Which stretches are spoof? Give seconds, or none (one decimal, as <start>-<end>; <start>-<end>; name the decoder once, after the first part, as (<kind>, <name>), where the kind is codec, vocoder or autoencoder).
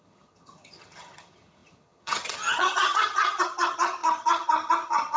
0.0-5.2 (vocoder, HiFi-GAN)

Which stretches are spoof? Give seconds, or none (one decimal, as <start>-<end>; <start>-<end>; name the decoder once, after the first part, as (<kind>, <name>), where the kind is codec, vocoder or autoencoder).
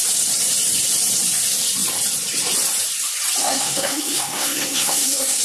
3.4-5.4 (codec, SNAC)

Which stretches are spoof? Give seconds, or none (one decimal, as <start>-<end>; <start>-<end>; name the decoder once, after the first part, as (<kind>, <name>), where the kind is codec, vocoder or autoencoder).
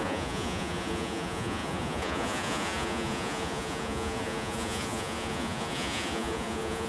0.0-6.9 (vocoder, Vocos)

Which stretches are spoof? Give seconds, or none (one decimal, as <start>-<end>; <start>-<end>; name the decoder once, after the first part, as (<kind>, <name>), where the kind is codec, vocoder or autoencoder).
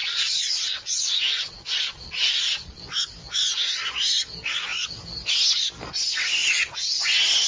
0.0-2.8 (vocoder, Vocos); 6.4-7.0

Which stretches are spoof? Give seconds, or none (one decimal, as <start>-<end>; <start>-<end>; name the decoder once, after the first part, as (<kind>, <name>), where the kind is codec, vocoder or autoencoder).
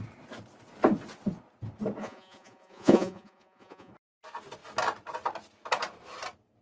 2.0-3.9 (vocoder, Vocos)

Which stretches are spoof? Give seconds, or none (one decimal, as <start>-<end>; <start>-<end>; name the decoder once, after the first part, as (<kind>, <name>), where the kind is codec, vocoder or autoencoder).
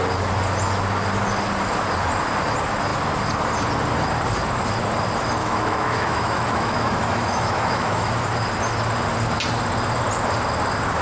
5.4-8.1 (autoencoder, DAC-VAE)